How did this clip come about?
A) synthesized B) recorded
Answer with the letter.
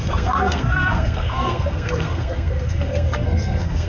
A